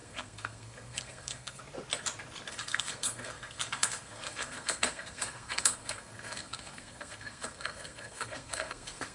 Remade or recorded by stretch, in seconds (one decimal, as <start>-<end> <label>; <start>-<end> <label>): 0.0-1.6 remade; 1.6-2.5 recorded; 2.5-9.1 remade